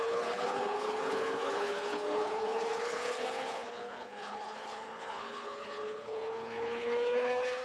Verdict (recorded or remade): remade